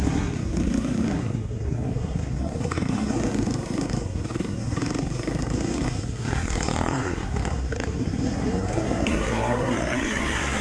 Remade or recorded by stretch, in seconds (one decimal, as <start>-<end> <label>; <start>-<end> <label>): 0.0-10.6 remade